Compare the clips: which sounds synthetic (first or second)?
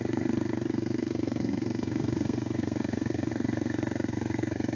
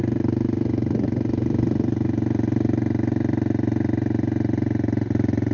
first